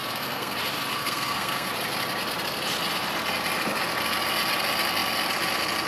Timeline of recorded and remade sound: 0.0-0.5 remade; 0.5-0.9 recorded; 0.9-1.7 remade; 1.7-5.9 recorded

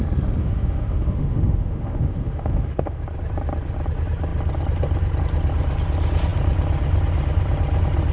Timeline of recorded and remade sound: 0.0-0.4 recorded; 0.4-3.0 remade; 3.0-8.1 recorded

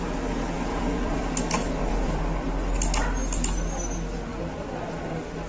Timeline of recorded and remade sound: 0.0-0.7 recorded; 0.7-1.2 remade; 1.2-1.6 recorded; 1.6-2.5 remade; 2.5-5.5 recorded

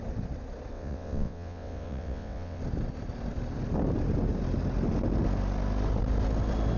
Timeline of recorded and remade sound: 0.0-0.7 recorded; 0.7-2.6 remade; 2.6-6.8 recorded